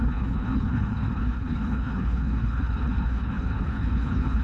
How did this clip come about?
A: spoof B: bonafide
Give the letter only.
A